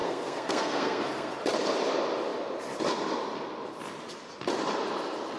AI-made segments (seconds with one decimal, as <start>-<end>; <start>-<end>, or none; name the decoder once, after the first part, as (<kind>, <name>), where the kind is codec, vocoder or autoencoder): 0.0-1.3 (codec, SNAC)